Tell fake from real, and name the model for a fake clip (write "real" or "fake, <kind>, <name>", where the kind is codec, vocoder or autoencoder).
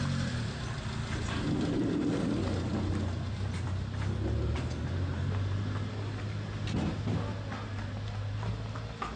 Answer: real